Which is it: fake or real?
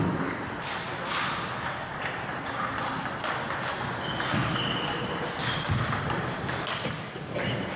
real